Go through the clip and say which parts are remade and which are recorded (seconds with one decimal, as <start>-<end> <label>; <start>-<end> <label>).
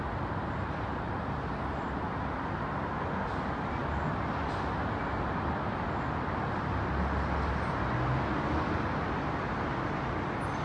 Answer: 0.0-10.6 recorded